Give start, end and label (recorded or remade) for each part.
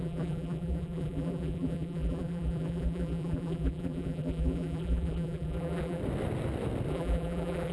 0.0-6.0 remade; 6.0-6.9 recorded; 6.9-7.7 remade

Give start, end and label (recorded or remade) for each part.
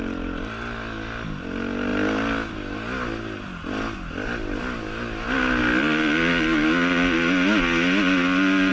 0.0-8.7 recorded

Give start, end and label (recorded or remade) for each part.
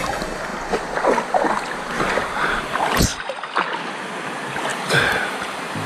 0.0-4.7 recorded; 4.7-5.9 remade